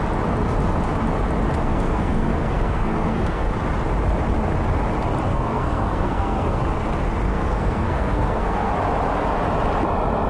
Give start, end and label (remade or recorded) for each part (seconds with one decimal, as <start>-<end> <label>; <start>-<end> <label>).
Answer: 0.0-1.6 recorded; 1.6-3.5 remade; 3.5-5.3 recorded; 5.3-6.6 remade; 6.6-7.3 recorded; 7.3-8.7 remade; 8.7-10.3 recorded